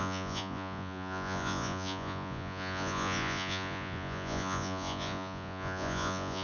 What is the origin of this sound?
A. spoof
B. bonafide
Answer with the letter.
A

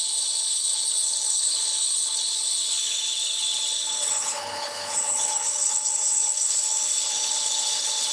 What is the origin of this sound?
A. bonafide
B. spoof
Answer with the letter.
B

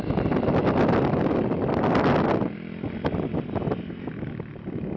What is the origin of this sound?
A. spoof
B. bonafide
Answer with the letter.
B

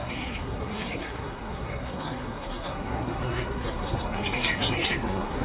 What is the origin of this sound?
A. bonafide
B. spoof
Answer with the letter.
B